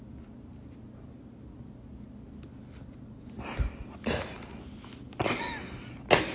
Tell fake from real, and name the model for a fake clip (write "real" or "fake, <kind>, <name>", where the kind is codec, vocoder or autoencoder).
real